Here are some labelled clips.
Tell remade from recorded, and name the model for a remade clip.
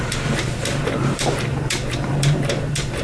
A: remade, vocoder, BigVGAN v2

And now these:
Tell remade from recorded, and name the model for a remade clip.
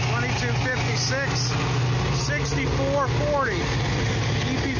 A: recorded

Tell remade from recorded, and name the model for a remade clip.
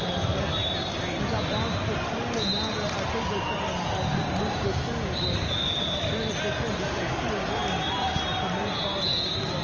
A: recorded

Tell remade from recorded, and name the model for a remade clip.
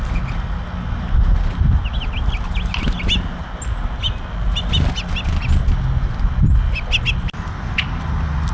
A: recorded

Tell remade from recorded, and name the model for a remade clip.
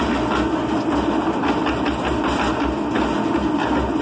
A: recorded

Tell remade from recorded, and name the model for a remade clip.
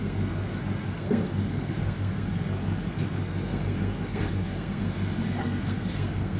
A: remade, codec, SNAC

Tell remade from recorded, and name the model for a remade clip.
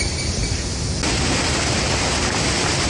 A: recorded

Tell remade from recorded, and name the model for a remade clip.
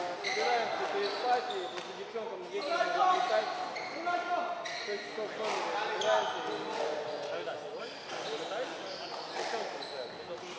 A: recorded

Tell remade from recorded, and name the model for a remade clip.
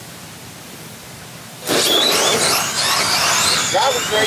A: recorded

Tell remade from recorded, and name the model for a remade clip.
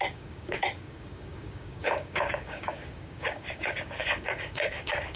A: remade, codec, DAC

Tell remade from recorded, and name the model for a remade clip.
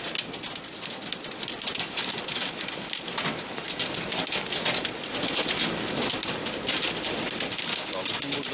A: recorded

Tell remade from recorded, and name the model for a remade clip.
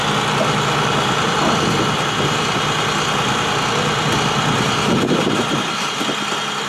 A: recorded